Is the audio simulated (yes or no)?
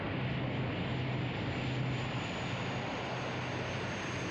no